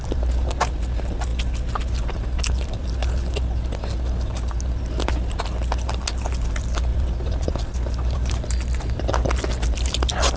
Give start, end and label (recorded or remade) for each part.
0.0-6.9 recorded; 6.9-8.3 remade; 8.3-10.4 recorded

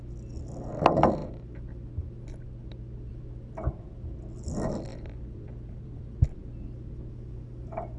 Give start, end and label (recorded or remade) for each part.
0.0-4.9 recorded; 4.9-6.6 remade; 6.6-8.0 recorded

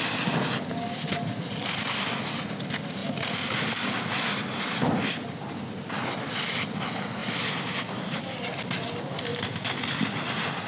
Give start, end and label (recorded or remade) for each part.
0.0-7.2 recorded; 7.2-8.5 remade; 8.5-10.7 recorded

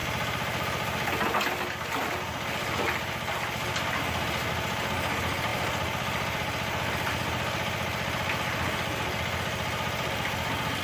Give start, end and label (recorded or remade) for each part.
0.0-10.8 recorded

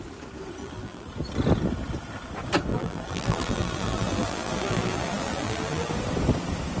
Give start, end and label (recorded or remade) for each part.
0.0-0.6 recorded; 0.6-1.1 remade; 1.1-2.7 recorded; 2.7-5.9 remade; 5.9-6.8 recorded

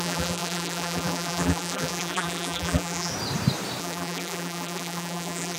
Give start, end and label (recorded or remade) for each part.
0.0-3.1 remade; 3.1-3.8 recorded; 3.8-5.6 remade

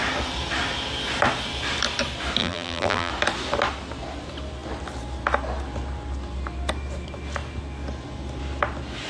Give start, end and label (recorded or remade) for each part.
0.0-2.4 recorded; 2.4-3.1 remade; 3.1-9.1 recorded

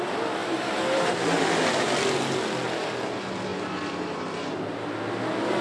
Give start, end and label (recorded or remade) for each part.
0.0-0.4 recorded; 0.4-1.6 remade; 1.6-3.5 recorded; 3.5-4.7 remade; 4.7-5.6 recorded